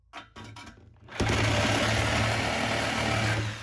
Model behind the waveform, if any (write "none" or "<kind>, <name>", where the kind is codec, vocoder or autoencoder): none